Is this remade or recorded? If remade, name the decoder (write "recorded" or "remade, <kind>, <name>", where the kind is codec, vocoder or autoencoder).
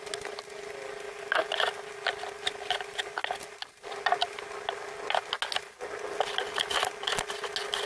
recorded